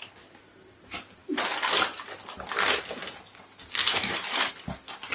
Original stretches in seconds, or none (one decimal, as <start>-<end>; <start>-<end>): 0.0-3.8; 4.5-5.1